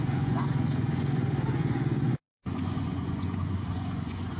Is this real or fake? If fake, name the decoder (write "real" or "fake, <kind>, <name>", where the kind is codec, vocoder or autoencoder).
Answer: fake, vocoder, Vocos